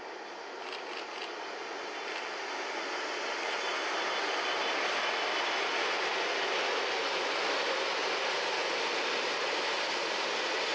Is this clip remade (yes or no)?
no